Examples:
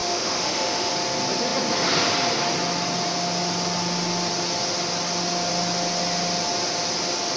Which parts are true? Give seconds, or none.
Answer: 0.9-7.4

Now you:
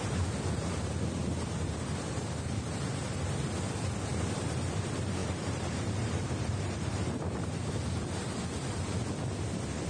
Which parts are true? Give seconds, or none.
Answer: 0.0-5.2; 7.7-9.9

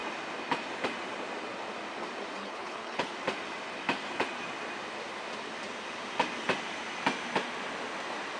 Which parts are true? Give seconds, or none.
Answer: 0.0-2.4; 3.1-8.4

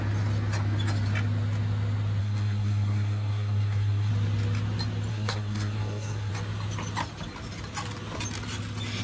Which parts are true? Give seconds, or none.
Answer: 0.0-2.2; 4.1-5.1; 6.3-9.0

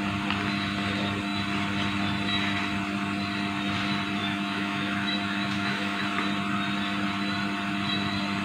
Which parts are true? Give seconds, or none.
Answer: 0.0-4.2; 6.0-8.4

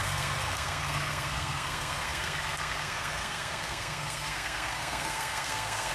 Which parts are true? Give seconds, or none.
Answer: none

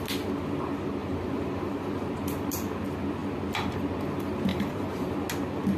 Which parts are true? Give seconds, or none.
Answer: 0.0-1.0; 2.1-4.5; 5.1-5.8